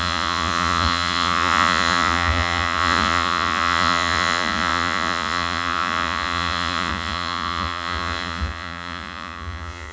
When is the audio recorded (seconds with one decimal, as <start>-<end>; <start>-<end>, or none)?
none